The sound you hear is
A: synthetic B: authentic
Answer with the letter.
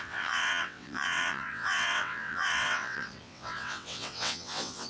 A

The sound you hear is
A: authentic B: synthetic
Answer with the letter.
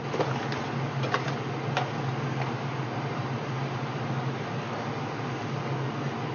A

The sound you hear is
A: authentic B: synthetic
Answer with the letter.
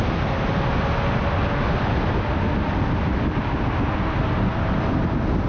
A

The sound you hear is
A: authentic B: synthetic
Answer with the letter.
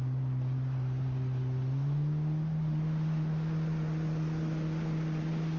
A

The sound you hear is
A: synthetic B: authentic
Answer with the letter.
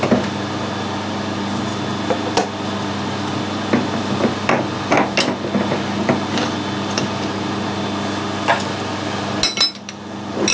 B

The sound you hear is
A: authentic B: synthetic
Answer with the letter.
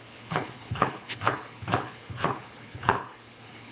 B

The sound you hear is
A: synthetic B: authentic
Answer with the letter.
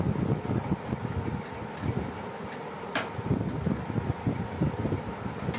B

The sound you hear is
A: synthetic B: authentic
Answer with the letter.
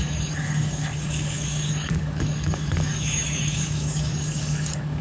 A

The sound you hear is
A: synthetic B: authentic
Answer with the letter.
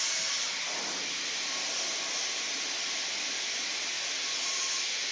B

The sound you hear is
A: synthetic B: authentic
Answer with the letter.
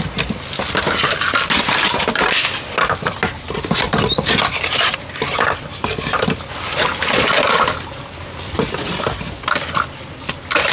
B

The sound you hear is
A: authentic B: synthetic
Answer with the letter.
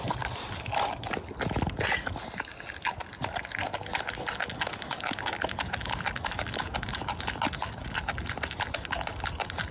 A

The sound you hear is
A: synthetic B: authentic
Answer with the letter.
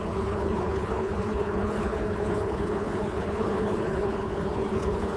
A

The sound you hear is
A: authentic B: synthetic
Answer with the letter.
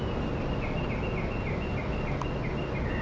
A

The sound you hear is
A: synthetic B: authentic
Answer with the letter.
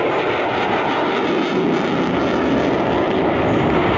B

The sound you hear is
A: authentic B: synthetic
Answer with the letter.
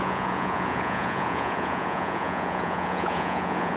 B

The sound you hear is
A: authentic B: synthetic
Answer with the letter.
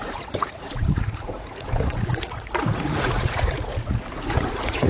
B